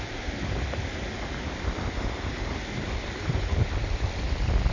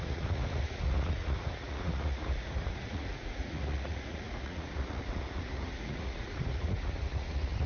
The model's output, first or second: second